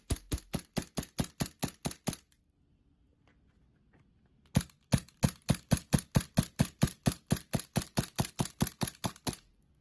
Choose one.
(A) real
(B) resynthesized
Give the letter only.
A